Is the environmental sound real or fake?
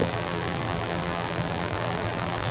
fake